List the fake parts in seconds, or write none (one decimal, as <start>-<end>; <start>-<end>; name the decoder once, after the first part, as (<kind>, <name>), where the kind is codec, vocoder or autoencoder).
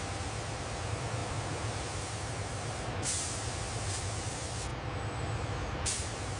none